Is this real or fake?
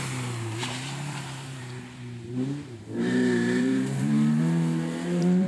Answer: fake